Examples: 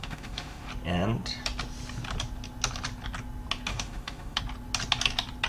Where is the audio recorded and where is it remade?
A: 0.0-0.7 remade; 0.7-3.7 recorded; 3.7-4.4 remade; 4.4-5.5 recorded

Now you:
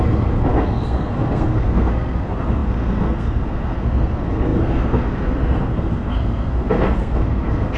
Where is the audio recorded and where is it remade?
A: 0.0-7.8 remade